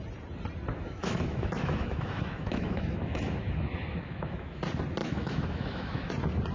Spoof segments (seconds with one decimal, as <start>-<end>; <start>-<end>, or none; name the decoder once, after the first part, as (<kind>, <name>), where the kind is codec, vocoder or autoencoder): 0.7-4.6 (autoencoder, DAC-VAE); 5.0-6.1